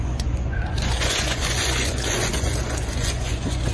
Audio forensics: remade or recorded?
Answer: remade